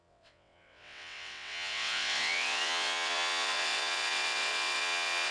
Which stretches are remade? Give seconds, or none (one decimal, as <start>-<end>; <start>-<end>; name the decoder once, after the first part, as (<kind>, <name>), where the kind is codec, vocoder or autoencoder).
0.0-5.3 (vocoder, WaveNeXt)